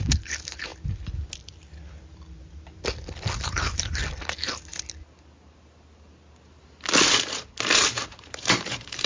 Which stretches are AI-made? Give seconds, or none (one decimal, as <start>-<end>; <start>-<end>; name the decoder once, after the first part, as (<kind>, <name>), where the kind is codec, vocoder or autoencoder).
0.0-0.7 (vocoder, BigVGAN v2); 3.4-4.0; 7.9-9.1

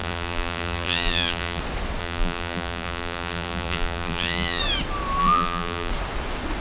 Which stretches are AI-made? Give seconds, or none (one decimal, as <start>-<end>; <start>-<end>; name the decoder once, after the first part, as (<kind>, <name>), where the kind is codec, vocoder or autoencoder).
0.0-1.6 (vocoder, BigVGAN v2); 2.0-4.6; 5.2-5.9

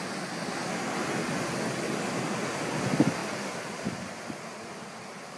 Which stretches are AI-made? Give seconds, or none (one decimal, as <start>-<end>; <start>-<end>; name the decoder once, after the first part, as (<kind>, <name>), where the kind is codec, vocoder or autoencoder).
none

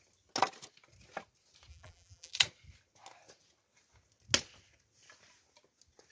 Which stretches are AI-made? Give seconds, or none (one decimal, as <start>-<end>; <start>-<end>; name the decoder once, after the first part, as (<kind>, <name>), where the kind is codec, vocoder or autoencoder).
1.7-2.3 (vocoder, BigVGAN v2)

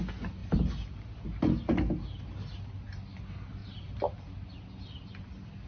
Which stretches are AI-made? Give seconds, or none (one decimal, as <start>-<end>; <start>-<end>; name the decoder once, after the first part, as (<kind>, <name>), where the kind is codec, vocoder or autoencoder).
3.6-4.3 (vocoder, BigVGAN v2)

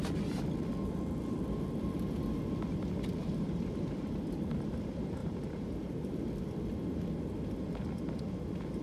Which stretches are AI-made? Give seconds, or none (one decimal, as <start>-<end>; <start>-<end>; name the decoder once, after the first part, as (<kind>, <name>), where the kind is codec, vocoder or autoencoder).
3.2-4.4 (vocoder, BigVGAN v2); 5.2-6.2